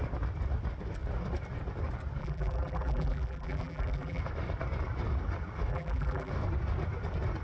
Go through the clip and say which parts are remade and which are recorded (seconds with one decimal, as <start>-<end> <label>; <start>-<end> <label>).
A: 0.0-2.2 recorded; 2.2-4.2 remade; 4.2-5.7 recorded; 5.7-6.3 remade; 6.3-7.4 recorded